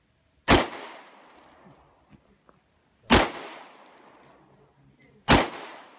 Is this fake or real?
real